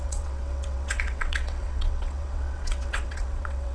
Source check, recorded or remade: remade